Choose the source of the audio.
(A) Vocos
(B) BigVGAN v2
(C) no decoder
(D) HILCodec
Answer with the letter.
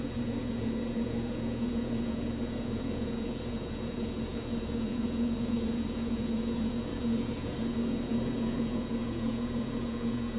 A